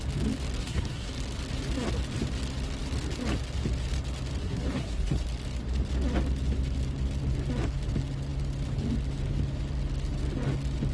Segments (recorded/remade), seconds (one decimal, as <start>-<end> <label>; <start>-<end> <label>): 0.0-0.6 recorded; 0.6-1.1 remade; 1.1-4.4 recorded; 4.4-5.2 remade; 5.2-10.9 recorded